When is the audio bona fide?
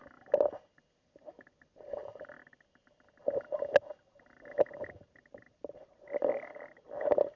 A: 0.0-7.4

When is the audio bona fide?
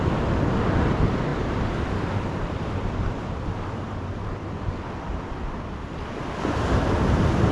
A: 0.0-1.3; 4.7-7.5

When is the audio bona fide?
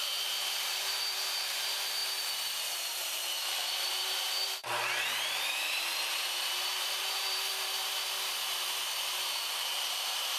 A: 2.0-2.5